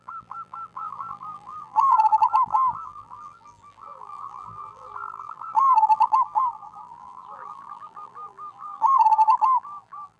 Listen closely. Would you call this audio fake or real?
fake